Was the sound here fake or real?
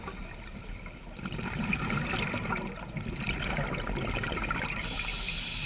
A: real